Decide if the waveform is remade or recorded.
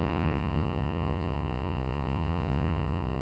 remade